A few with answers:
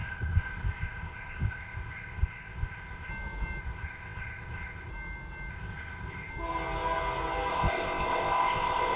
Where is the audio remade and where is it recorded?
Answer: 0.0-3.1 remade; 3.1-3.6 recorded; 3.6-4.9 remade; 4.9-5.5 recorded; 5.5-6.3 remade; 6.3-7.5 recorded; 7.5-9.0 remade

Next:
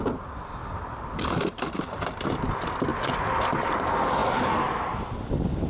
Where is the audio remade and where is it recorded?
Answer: 0.0-5.7 recorded

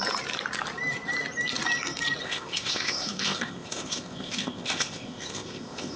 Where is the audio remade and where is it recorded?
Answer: 0.0-2.2 recorded; 2.2-6.0 remade